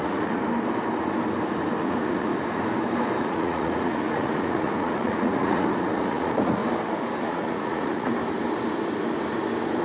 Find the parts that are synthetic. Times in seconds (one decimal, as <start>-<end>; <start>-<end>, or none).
0.0-0.4; 1.8-2.3; 3.2-6.6; 7.2-8.1